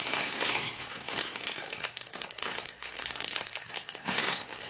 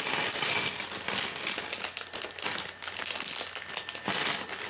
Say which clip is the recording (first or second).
second